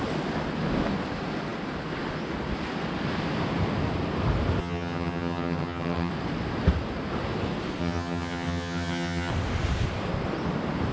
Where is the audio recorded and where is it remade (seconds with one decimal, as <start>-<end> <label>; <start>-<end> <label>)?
0.0-4.6 recorded; 4.6-6.1 remade; 6.1-7.8 recorded; 7.8-9.3 remade; 9.3-10.9 recorded